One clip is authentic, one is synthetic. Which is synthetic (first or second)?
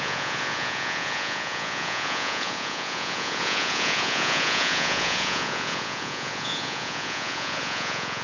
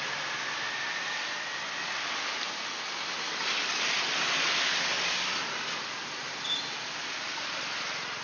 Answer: first